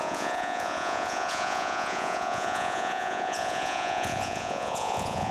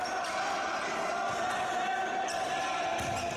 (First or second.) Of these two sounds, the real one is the second